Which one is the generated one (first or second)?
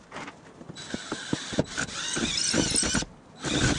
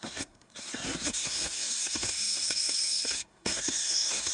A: second